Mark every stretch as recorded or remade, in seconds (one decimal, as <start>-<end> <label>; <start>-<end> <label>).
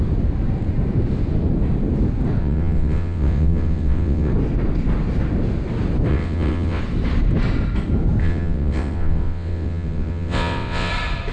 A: 0.0-2.4 recorded; 2.4-4.3 remade; 4.3-6.1 recorded; 6.1-6.8 remade; 6.8-8.2 recorded; 8.2-10.9 remade; 10.9-11.3 recorded